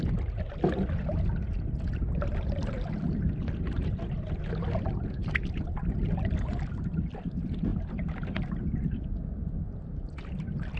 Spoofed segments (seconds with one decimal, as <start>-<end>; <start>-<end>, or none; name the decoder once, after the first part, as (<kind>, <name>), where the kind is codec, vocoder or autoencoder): none